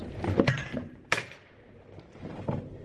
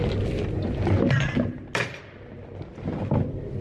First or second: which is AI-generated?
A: first